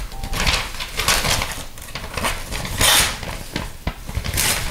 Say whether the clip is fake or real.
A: real